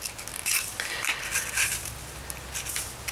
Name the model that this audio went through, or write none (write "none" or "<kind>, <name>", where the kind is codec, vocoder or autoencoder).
none